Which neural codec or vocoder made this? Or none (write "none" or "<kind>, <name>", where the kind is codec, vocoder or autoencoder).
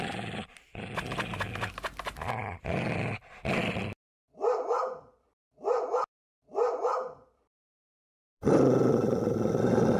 vocoder, BigVGAN v2